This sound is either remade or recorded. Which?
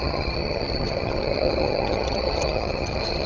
remade